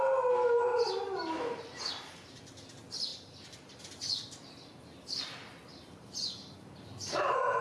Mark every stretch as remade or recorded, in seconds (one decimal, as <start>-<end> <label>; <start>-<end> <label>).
0.0-0.7 recorded; 0.7-2.3 remade; 2.3-3.1 recorded; 3.1-3.8 remade; 3.8-5.7 recorded; 5.7-7.6 remade